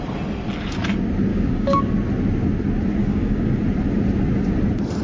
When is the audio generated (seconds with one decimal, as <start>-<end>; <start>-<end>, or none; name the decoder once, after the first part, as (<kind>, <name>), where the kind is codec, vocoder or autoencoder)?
1.3-1.9 (codec, DAC); 3.0-3.6

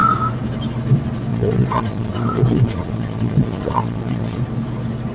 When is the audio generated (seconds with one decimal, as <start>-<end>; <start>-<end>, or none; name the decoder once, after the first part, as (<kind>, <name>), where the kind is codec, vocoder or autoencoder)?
1.3-4.4 (vocoder, Vocos)

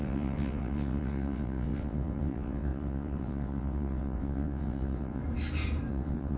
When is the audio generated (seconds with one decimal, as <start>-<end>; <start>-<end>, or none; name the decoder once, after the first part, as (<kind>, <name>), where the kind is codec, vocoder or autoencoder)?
0.0-5.2 (vocoder, WaveNeXt); 5.9-6.4